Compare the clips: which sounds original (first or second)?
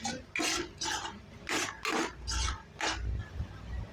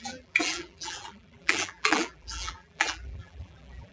first